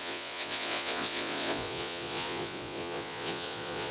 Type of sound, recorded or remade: remade